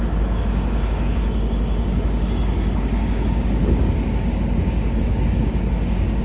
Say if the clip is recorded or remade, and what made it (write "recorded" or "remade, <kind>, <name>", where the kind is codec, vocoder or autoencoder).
remade, codec, DAC